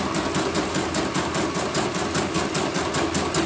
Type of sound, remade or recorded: recorded